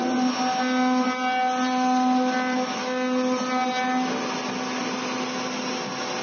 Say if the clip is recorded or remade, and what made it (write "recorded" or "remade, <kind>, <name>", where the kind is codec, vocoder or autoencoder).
recorded